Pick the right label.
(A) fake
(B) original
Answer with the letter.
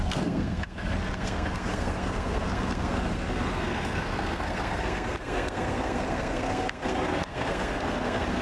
A